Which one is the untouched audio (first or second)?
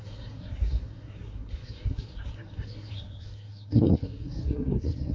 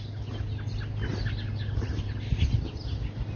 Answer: second